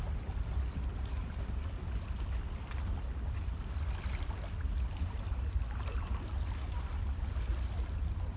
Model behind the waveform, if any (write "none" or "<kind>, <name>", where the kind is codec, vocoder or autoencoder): none